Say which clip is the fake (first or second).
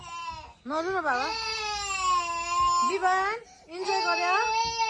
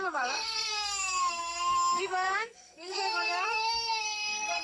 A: second